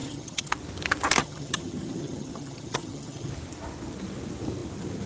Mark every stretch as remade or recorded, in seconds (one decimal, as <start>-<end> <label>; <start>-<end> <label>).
0.0-0.5 remade; 0.5-1.2 recorded; 1.2-3.3 remade; 3.3-5.1 recorded